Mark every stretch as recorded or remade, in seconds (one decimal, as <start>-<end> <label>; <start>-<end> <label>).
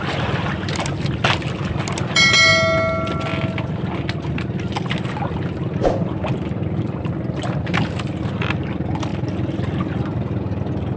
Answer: 0.0-11.0 recorded